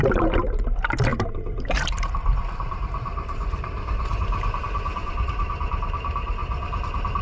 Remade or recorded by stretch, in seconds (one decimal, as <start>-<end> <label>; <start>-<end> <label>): 0.0-6.4 remade; 6.4-7.2 recorded